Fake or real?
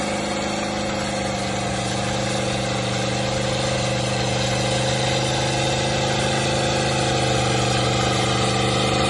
real